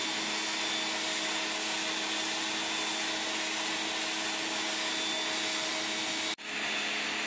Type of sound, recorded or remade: recorded